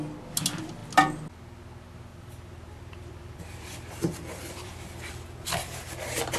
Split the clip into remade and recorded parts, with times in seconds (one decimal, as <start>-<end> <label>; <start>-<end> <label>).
0.0-2.1 recorded; 2.1-5.1 remade; 5.1-6.4 recorded